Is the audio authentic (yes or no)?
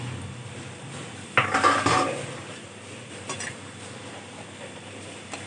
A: yes